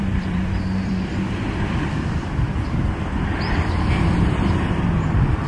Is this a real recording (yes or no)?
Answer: no